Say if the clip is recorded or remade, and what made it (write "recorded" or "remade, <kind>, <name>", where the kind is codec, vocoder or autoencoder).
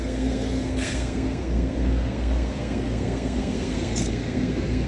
remade, codec, SNAC